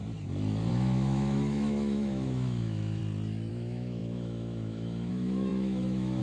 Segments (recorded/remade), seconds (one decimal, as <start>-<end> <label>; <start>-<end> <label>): 0.0-0.7 recorded; 0.7-3.0 remade; 3.0-3.5 recorded; 3.5-6.2 remade